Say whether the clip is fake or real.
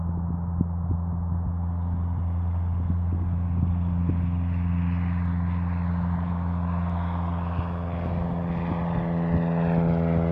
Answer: real